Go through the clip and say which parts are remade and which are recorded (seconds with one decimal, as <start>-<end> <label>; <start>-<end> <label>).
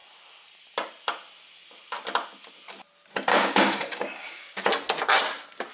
0.0-3.3 recorded; 3.3-4.6 remade; 4.6-5.7 recorded